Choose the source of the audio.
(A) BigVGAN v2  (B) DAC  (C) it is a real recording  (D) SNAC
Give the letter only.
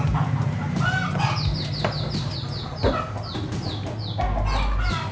C